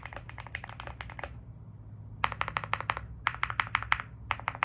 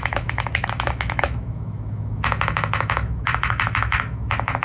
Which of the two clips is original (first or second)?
first